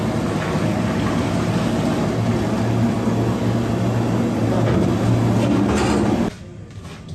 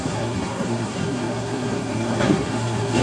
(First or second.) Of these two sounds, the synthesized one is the second